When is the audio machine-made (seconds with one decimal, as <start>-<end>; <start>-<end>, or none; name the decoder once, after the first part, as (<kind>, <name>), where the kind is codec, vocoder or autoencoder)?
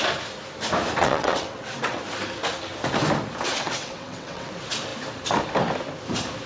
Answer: 1.0-2.0 (vocoder, WaveNeXt); 3.5-4.5